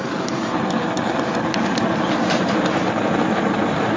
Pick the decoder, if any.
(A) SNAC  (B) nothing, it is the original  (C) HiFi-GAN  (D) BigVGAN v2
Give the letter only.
B